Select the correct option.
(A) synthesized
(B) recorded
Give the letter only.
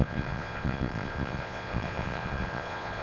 A